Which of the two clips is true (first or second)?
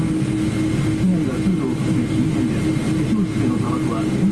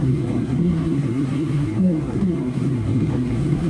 first